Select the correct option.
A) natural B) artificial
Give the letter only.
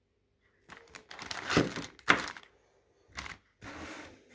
A